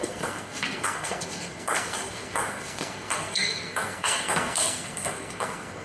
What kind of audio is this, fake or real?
fake